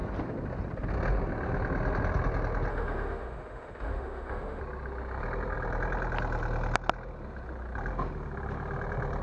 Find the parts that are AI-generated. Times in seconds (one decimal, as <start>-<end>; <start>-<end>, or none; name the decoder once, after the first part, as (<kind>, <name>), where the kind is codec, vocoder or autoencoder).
2.7-4.6 (autoencoder, DAC-VAE)